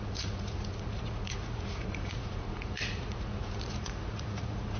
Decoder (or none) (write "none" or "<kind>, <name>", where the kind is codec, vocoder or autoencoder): vocoder, Vocos